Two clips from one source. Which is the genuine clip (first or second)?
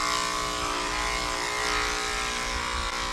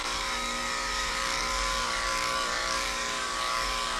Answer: first